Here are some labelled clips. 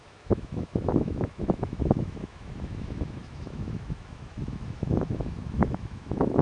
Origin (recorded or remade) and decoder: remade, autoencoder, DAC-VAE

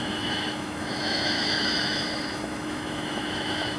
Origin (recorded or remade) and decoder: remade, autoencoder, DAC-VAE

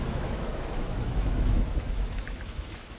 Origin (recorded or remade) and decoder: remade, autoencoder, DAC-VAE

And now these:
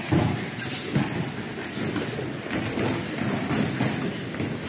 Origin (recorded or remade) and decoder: recorded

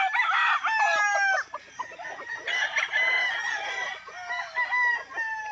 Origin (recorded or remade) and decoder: recorded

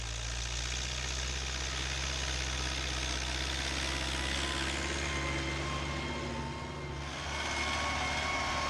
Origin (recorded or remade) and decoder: recorded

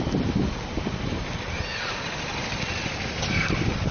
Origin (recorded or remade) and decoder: recorded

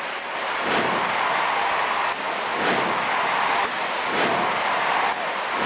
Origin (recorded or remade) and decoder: recorded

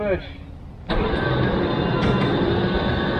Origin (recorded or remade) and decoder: recorded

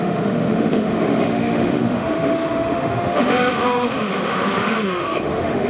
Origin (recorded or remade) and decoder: remade, autoencoder, DAC-VAE